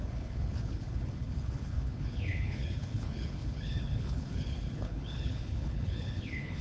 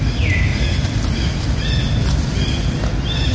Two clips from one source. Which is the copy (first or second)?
first